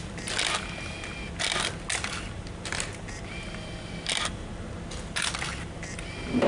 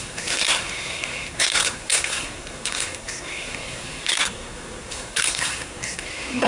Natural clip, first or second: first